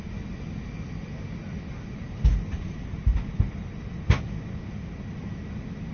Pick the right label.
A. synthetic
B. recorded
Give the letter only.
B